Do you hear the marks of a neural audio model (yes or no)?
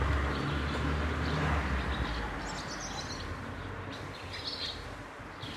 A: no